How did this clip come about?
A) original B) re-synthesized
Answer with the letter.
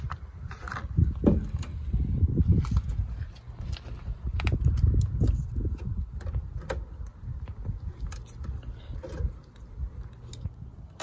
A